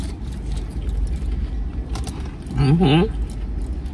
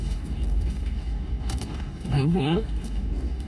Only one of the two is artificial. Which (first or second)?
second